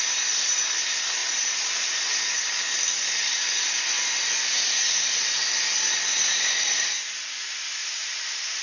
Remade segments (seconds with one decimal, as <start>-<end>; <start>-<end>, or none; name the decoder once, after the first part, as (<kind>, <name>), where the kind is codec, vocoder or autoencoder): 7.8-8.6 (vocoder, BigVGAN v2)